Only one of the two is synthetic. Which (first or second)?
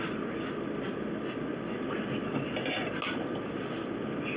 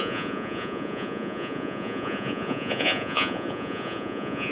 second